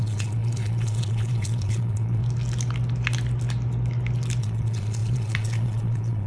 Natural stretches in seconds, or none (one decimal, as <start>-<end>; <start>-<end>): 2.2-4.4